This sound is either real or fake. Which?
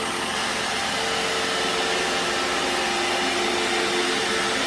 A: real